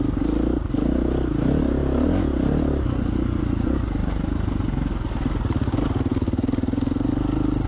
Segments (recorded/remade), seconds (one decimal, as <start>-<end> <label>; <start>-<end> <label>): 0.0-4.0 recorded; 4.0-4.9 remade; 4.9-6.1 recorded; 6.1-7.1 remade; 7.1-7.7 recorded